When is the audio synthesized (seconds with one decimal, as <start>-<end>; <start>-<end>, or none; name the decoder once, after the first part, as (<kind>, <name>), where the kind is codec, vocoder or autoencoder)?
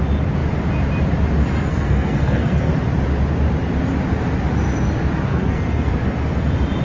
1.7-2.7 (codec, SNAC); 5.3-5.9